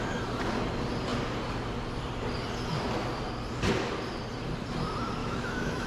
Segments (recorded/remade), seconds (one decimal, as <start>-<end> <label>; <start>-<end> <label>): 0.0-5.2 recorded; 5.2-5.9 remade